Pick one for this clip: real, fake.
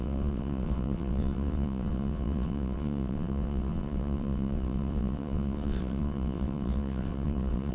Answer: fake